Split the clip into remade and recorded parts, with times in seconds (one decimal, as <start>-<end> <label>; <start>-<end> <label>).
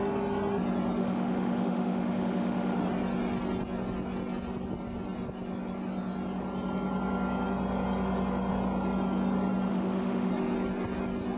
0.0-1.0 recorded; 1.0-2.8 remade; 2.8-9.7 recorded; 9.7-10.3 remade; 10.3-11.4 recorded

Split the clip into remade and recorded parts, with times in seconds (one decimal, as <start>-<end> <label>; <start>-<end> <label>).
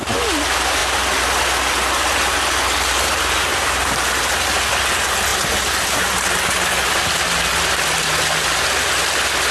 0.0-9.5 recorded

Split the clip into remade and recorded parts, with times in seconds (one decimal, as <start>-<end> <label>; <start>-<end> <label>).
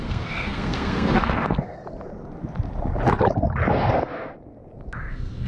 0.0-1.7 remade; 1.7-3.7 recorded; 3.7-4.3 remade; 4.3-5.1 recorded; 5.1-5.5 remade